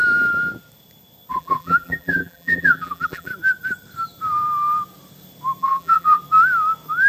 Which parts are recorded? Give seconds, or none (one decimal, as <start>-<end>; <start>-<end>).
0.0-1.3; 3.3-5.6; 6.2-7.1